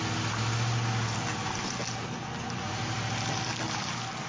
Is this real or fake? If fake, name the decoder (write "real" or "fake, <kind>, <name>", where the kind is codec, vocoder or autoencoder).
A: real